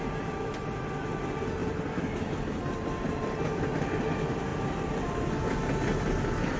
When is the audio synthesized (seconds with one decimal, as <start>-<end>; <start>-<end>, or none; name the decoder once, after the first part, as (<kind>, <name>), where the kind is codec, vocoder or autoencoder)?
none